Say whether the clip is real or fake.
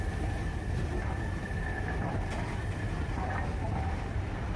fake